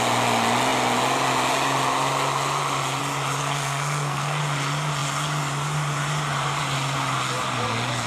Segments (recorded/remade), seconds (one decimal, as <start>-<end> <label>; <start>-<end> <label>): 0.0-3.4 recorded; 3.4-4.4 remade; 4.4-8.1 recorded